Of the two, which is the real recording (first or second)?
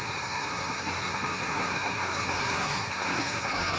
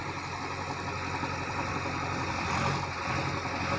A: second